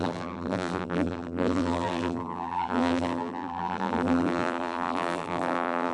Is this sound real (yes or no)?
no